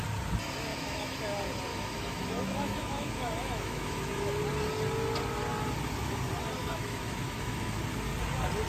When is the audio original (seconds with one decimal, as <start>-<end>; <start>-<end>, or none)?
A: 0.0-0.7; 1.2-1.7; 4.4-6.6; 7.8-8.7